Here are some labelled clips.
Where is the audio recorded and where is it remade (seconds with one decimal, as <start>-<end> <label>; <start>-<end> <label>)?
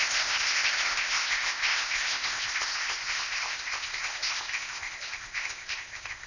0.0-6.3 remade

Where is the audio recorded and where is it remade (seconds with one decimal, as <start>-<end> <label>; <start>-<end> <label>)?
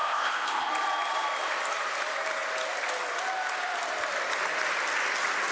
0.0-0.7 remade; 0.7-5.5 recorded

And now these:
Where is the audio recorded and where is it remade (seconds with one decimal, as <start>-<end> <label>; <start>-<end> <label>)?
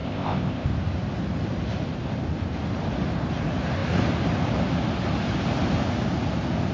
0.0-0.7 remade; 0.7-6.7 recorded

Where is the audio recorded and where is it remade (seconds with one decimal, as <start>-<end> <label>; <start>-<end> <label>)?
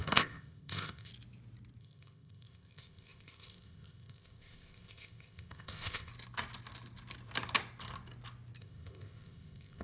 0.0-1.1 remade; 1.1-1.8 recorded; 1.8-6.1 remade; 6.1-8.6 recorded; 8.6-9.8 remade